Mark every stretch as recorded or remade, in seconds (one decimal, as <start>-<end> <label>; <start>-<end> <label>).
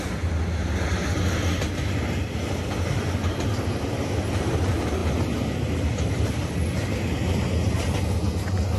0.0-8.8 recorded